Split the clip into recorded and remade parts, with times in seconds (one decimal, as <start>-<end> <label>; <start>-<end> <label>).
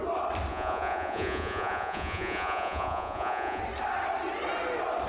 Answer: 0.0-0.5 recorded; 0.5-3.6 remade; 3.6-5.1 recorded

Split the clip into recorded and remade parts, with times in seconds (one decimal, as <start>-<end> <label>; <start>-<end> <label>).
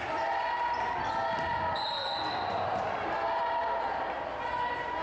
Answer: 0.0-1.5 recorded; 1.5-4.5 remade; 4.5-5.0 recorded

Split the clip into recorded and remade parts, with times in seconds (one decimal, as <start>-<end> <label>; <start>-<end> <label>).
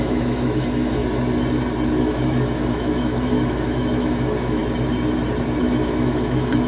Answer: 0.0-1.0 remade; 1.0-2.0 recorded; 2.0-4.6 remade; 4.6-5.6 recorded; 5.6-6.7 remade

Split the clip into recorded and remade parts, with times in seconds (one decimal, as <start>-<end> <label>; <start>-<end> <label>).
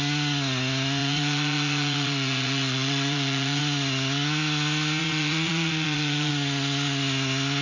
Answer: 0.0-1.0 recorded; 1.0-3.6 remade; 3.6-5.0 recorded; 5.0-6.3 remade; 6.3-7.6 recorded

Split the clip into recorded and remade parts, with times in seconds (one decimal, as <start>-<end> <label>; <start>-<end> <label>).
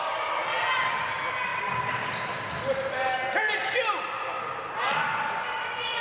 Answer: 0.0-6.0 recorded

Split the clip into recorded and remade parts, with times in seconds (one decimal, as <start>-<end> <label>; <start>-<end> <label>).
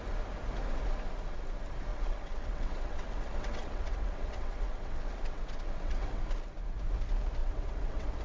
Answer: 0.0-1.9 recorded; 1.9-6.2 remade; 6.2-7.4 recorded; 7.4-8.2 remade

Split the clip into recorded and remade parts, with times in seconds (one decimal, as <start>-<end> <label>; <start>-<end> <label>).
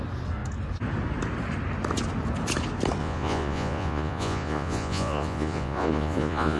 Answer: 0.0-3.0 recorded; 3.0-6.6 remade